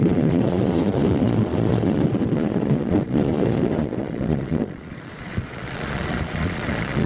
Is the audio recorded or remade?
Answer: remade